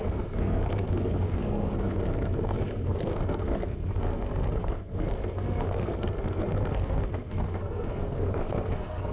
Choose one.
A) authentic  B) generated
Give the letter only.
B